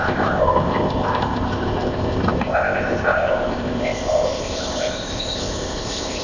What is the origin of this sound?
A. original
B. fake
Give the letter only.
B